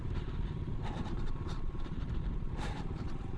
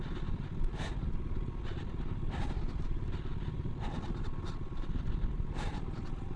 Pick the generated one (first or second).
first